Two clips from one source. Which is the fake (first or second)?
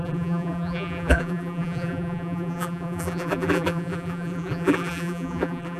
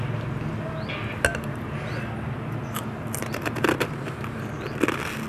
first